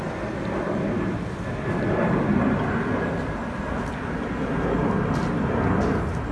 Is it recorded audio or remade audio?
recorded